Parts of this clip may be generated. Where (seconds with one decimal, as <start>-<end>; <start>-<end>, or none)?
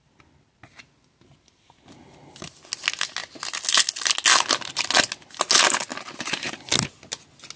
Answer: none